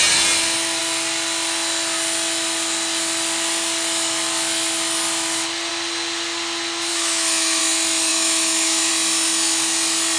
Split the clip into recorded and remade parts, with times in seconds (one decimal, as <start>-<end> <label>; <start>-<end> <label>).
0.0-6.9 recorded; 6.9-7.6 remade; 7.6-8.1 recorded; 8.1-8.9 remade; 8.9-10.2 recorded